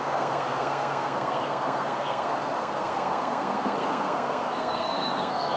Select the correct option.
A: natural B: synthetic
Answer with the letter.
B